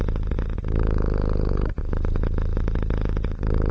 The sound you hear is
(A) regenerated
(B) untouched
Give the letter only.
B